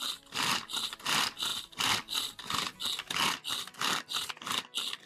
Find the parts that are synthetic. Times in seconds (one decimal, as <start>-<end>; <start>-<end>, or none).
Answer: none

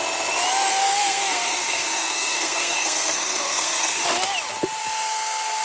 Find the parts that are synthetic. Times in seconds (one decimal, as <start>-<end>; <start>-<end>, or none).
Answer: 0.7-4.0; 4.8-5.6

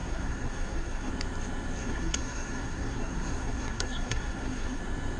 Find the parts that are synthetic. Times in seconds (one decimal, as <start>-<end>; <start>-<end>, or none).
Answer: 0.0-1.1; 1.8-4.8

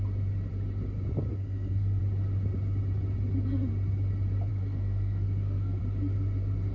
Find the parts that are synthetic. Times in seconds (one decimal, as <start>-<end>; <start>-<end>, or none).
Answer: 1.3-2.0; 4.5-5.8

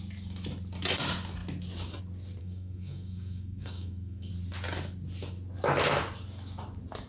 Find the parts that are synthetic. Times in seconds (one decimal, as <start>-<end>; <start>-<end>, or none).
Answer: 2.4-4.3